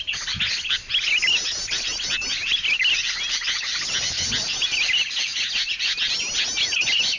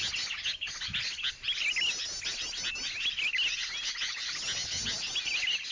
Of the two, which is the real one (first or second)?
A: second